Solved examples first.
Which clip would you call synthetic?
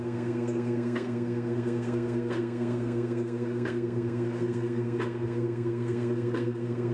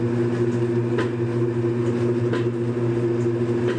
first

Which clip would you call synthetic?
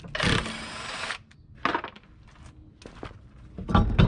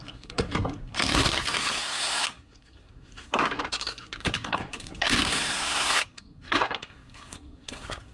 second